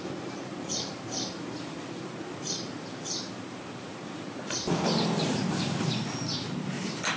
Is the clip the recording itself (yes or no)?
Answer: no